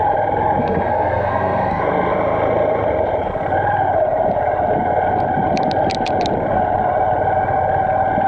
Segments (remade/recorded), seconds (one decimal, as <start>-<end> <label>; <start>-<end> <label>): 0.0-0.6 recorded; 0.6-1.8 remade; 1.8-8.3 recorded